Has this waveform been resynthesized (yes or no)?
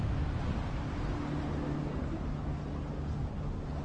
no